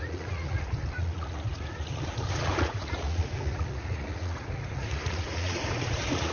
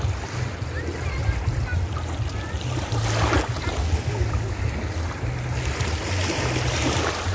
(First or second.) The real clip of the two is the second